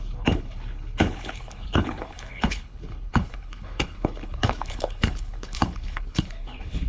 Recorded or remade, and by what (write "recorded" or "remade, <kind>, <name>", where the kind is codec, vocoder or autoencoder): remade, codec, HILCodec